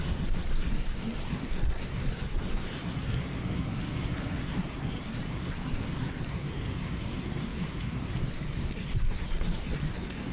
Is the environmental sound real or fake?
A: fake